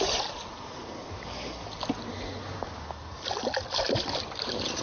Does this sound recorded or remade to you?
recorded